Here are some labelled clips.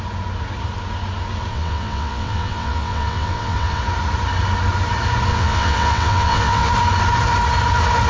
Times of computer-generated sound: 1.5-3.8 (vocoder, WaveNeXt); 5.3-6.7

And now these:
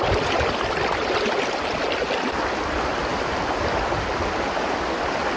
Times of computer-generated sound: none

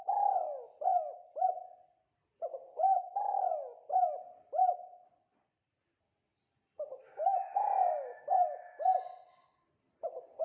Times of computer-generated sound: none

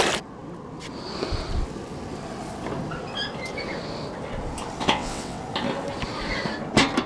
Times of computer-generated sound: 4.8-5.4 (vocoder, WaveNeXt)

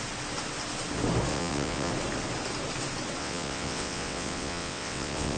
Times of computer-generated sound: 1.3-1.9 (vocoder, WaveNeXt); 3.2-5.4

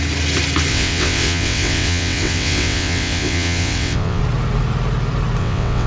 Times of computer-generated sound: 0.7-4.2 (vocoder, WaveNeXt); 5.4-5.9

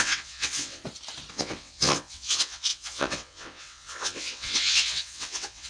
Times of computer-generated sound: 0.0-0.8 (vocoder, WaveNeXt); 1.3-5.7